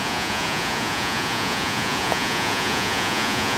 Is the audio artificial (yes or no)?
yes